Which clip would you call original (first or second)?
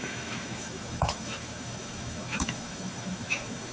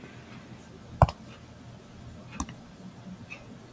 second